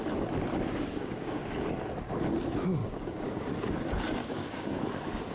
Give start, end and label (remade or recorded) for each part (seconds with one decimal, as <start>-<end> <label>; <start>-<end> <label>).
0.0-0.9 recorded; 0.9-1.5 remade; 1.5-2.8 recorded; 2.8-3.5 remade; 3.5-4.2 recorded; 4.2-4.8 remade; 4.8-5.3 recorded